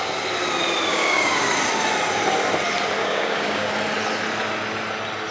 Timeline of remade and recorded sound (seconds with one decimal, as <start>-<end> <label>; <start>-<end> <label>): 0.0-0.9 recorded; 0.9-1.5 remade; 1.5-3.0 recorded; 3.0-3.7 remade; 3.7-5.3 recorded